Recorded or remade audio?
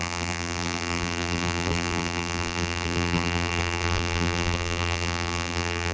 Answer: remade